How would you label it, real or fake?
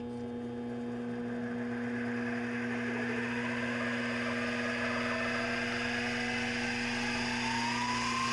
real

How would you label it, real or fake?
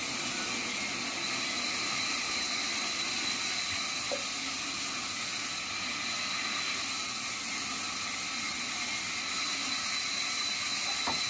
real